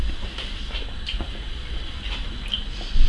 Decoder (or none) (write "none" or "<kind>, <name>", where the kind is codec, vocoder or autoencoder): none